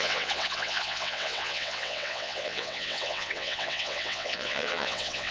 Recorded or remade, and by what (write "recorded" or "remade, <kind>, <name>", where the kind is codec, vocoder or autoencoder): remade, vocoder, WaveNeXt